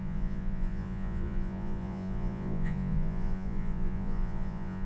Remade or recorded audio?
remade